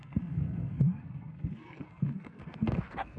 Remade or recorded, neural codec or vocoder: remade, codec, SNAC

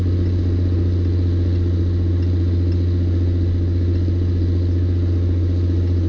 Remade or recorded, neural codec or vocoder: recorded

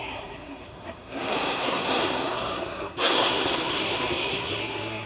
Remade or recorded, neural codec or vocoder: remade, codec, SNAC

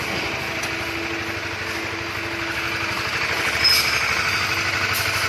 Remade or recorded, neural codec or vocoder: recorded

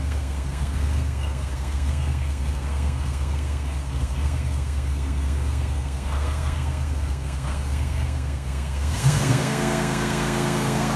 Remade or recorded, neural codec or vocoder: remade, codec, SNAC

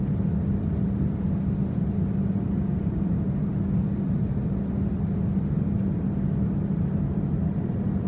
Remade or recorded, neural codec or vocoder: recorded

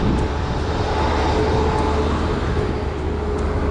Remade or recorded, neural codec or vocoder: recorded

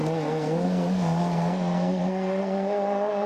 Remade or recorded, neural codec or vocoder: remade, codec, SNAC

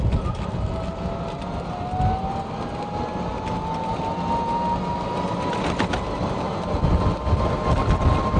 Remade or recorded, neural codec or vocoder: recorded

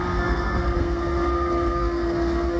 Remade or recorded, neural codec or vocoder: remade, codec, SNAC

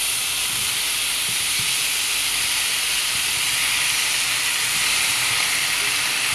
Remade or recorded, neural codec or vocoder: recorded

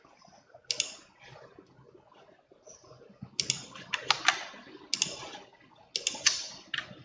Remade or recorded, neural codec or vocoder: recorded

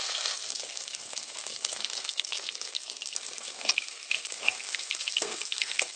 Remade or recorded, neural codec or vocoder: remade, codec, SNAC